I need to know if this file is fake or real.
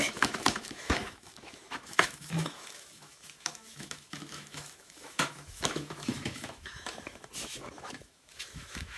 fake